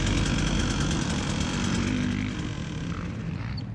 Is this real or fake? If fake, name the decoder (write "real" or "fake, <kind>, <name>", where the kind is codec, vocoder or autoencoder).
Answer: real